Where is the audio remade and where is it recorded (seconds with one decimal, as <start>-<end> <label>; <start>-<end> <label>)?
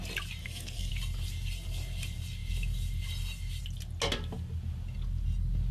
0.0-0.4 recorded; 0.4-0.9 remade; 0.9-5.7 recorded